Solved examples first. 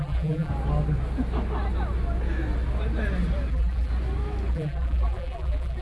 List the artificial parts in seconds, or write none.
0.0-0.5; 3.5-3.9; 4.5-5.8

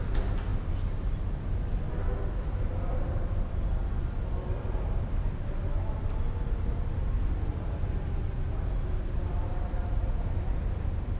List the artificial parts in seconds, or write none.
none